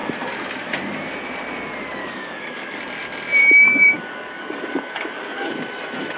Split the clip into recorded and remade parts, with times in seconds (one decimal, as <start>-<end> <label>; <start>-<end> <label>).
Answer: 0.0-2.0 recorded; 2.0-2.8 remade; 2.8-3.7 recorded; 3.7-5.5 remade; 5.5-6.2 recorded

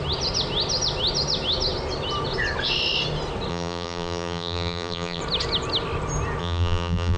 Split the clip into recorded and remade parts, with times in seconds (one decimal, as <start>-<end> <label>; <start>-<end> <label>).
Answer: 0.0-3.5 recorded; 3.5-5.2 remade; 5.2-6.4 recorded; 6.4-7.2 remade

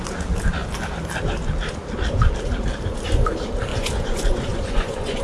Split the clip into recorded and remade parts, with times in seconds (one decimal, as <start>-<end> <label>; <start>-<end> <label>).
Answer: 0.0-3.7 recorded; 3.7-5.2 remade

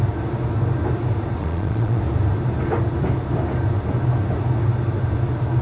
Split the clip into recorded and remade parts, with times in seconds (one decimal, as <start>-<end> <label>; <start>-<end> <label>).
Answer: 0.0-1.4 recorded; 1.4-2.0 remade; 2.0-5.6 recorded